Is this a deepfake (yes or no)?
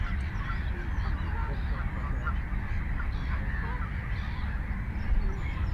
no